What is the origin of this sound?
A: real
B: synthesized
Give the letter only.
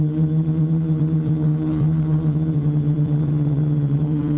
B